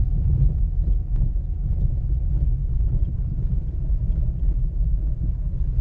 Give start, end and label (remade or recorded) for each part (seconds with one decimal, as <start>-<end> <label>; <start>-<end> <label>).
0.0-2.6 recorded; 2.6-4.9 remade; 4.9-5.8 recorded